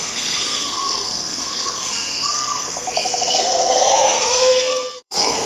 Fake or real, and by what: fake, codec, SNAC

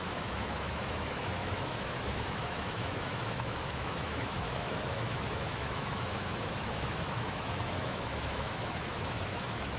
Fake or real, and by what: fake, autoencoder, DAC-VAE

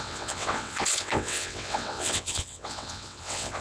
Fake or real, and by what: fake, vocoder, WaveNeXt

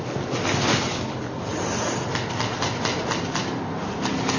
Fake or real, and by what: real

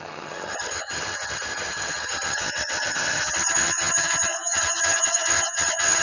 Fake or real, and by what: fake, vocoder, HiFi-GAN